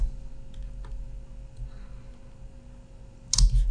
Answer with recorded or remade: recorded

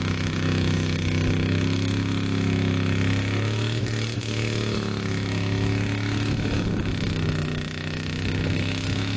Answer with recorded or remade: remade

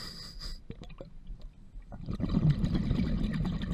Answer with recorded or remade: recorded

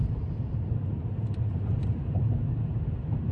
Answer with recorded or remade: remade